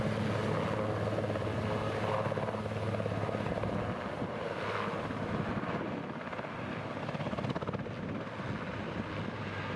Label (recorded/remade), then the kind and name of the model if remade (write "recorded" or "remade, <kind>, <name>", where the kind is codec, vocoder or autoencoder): recorded